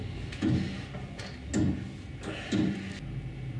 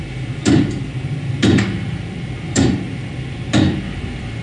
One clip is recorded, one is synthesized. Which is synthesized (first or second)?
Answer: second